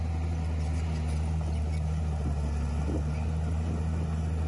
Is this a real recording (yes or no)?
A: yes